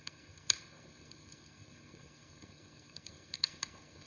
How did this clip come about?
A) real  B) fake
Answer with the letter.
B